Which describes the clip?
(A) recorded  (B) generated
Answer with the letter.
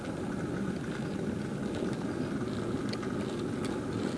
A